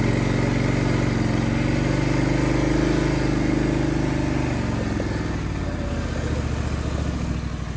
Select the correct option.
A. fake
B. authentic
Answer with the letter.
B